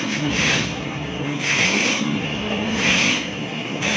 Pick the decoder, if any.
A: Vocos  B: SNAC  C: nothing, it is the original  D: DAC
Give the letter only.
B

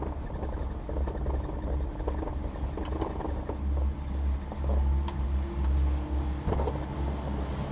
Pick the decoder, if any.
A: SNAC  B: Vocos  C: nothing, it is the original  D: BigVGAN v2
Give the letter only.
C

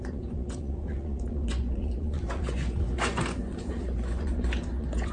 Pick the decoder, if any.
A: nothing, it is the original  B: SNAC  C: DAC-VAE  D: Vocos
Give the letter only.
D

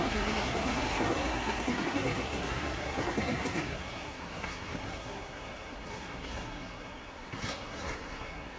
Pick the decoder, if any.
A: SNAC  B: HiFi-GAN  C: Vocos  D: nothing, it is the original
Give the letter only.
A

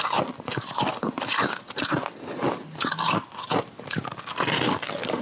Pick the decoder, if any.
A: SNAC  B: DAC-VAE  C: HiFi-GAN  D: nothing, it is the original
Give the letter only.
D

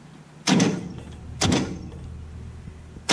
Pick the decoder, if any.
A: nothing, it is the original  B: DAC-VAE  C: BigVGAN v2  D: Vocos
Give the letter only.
A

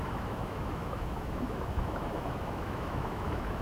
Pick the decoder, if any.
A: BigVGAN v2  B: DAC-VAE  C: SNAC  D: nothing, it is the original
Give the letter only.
B